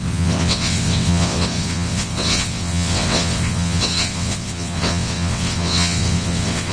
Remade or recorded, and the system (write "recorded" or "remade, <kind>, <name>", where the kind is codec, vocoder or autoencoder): remade, vocoder, WaveNeXt